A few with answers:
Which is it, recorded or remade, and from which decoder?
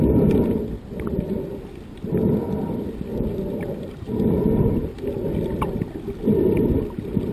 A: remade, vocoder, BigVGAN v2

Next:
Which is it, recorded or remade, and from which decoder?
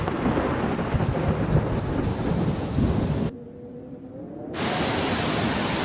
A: recorded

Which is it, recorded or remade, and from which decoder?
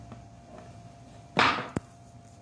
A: recorded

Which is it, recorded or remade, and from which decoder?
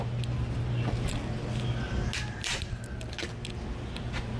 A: recorded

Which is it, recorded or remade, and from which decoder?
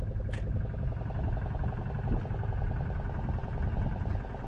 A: recorded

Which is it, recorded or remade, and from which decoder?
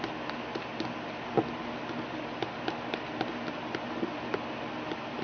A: recorded